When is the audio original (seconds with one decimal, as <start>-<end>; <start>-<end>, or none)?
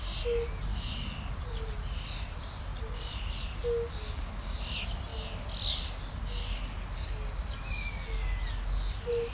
0.0-9.3